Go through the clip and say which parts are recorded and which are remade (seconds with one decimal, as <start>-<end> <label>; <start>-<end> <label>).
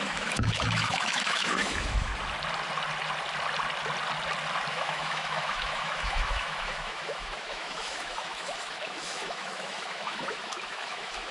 0.0-2.1 remade; 2.1-4.7 recorded; 4.7-11.3 remade